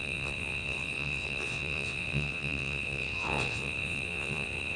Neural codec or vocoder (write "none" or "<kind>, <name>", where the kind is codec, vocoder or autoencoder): vocoder, WaveNeXt